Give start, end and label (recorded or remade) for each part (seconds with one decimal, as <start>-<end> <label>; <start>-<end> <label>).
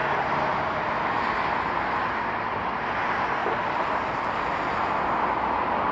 0.0-3.4 recorded; 3.4-4.2 remade; 4.2-5.9 recorded